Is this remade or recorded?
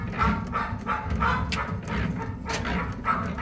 recorded